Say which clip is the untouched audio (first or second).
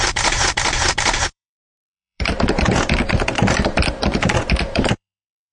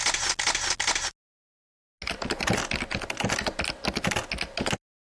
second